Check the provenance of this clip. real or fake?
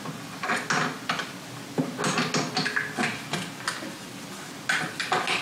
real